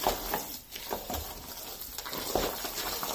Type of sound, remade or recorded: recorded